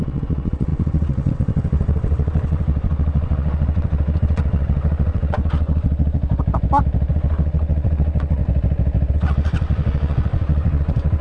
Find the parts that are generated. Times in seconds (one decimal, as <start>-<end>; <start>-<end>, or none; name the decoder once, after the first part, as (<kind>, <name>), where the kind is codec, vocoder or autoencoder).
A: 0.0-6.2 (vocoder, WaveNeXt); 7.1-8.4; 9.1-11.2